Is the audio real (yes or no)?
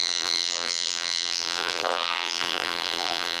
no